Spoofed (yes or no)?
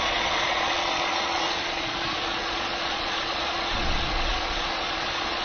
yes